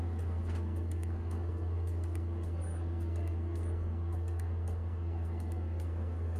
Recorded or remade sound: remade